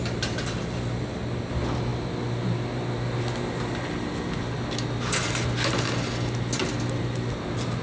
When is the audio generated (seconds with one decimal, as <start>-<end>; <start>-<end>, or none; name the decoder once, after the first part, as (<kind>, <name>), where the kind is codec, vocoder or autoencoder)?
none